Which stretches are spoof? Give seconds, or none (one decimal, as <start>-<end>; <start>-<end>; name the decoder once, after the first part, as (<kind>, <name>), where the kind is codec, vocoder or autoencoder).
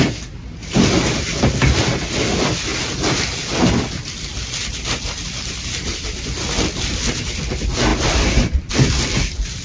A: 7.9-8.7 (vocoder, BigVGAN v2)